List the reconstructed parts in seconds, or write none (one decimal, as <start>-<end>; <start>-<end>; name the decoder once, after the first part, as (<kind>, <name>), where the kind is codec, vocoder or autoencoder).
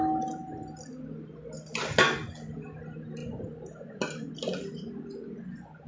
none